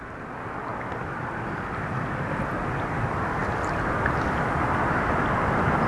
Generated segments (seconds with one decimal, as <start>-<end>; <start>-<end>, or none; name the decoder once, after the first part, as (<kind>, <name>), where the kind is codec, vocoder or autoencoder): none